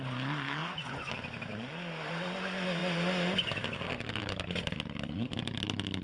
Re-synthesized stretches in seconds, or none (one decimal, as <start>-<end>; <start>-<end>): 0.6-1.1